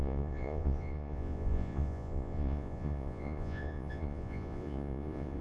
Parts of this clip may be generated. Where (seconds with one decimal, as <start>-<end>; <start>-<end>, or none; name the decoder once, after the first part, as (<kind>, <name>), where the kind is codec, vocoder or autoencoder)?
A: 0.0-5.4 (vocoder, Vocos)